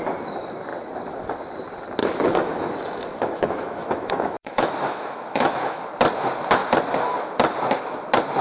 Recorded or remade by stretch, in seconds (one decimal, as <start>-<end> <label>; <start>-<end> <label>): 0.0-2.0 recorded; 2.0-5.8 remade; 5.8-8.4 recorded